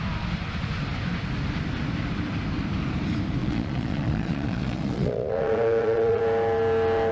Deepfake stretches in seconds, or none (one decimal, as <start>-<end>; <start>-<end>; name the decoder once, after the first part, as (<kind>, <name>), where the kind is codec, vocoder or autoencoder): 3.4-6.2 (vocoder, Vocos)

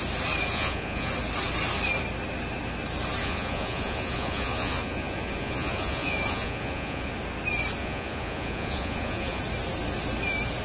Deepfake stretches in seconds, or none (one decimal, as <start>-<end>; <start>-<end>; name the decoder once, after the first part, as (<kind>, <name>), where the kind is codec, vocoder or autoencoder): 0.5-1.1 (vocoder, Vocos); 3.2-7.1; 7.8-9.4

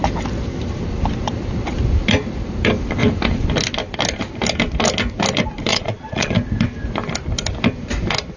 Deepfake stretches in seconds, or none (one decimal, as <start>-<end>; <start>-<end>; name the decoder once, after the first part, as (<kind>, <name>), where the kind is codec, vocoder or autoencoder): 5.7-6.3 (vocoder, Vocos)

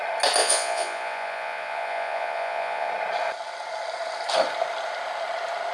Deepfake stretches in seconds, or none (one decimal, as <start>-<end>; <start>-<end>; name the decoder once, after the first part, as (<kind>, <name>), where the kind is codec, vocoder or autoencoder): 0.4-2.9 (vocoder, Vocos)

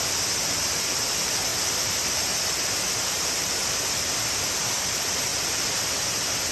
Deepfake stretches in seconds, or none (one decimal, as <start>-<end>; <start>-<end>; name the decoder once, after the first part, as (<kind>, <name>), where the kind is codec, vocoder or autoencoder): none

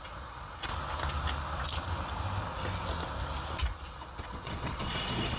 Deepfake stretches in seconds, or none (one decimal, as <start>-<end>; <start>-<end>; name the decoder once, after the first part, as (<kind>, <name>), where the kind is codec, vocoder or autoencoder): 0.0-0.7 (vocoder, Vocos); 3.6-5.4

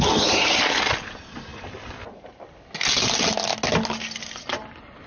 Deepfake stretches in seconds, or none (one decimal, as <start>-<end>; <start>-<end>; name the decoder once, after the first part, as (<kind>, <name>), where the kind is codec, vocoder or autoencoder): none

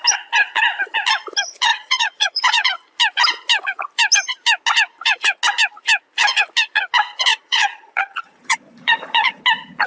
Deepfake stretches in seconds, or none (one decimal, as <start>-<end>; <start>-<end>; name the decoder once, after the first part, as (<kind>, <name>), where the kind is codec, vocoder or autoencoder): 1.7-2.7 (vocoder, Vocos); 7.3-9.4